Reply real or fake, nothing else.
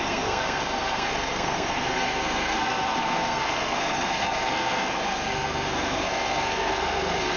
fake